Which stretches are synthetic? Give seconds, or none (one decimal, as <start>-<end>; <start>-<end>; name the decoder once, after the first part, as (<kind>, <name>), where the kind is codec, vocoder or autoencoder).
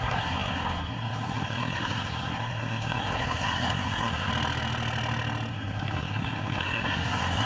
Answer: 0.0-4.3 (codec, SNAC); 5.5-7.5